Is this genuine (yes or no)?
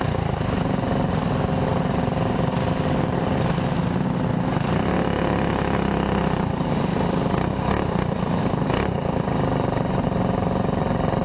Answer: yes